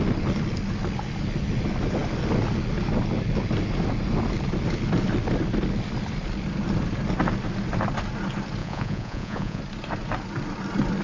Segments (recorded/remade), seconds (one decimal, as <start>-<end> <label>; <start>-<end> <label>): 0.0-8.6 recorded; 8.6-9.6 remade; 9.6-11.0 recorded

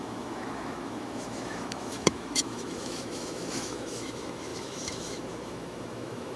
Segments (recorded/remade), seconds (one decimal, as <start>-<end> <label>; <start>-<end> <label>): 0.0-6.4 remade

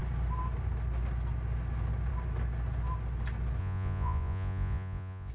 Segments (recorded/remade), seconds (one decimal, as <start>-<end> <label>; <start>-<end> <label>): 0.0-3.6 recorded; 3.6-5.3 remade